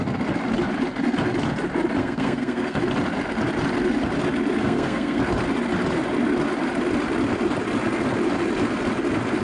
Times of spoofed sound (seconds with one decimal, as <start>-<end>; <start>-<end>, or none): 2.0-2.8; 4.6-5.2